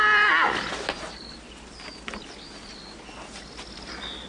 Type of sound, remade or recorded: recorded